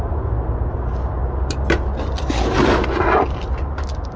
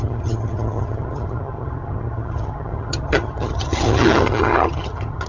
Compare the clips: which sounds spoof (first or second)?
second